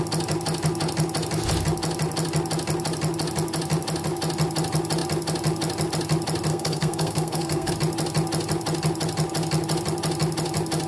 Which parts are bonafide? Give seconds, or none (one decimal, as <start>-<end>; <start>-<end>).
0.0-6.5; 7.7-10.9